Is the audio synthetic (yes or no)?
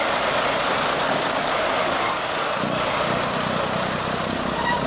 no